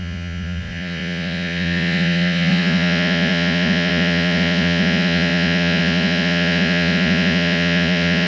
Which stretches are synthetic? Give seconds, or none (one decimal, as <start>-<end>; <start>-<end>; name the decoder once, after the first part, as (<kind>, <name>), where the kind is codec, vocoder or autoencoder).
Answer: 0.0-8.3 (vocoder, Vocos)